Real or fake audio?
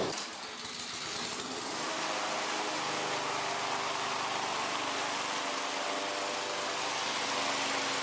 real